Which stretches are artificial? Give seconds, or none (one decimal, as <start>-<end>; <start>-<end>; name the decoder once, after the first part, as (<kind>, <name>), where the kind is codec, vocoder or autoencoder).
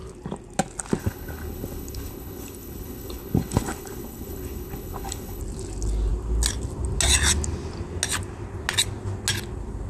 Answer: 1.0-5.4 (codec, HILCodec)